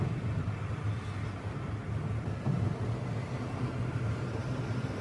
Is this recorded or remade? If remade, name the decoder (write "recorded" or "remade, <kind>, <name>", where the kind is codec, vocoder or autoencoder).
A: recorded